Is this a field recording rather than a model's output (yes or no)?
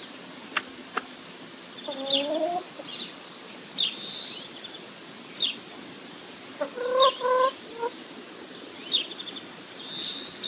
yes